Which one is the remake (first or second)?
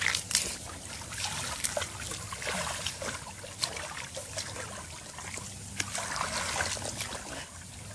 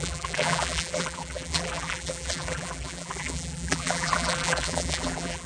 second